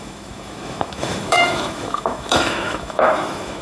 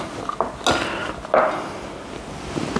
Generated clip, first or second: first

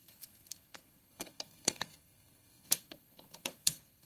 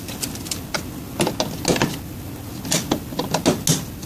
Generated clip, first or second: first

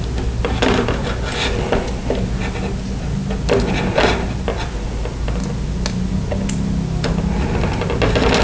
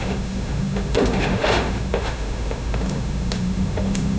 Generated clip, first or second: second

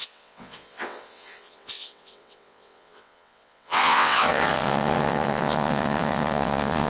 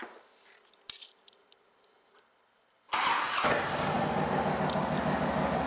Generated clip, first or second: first